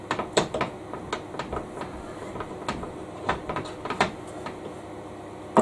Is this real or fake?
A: real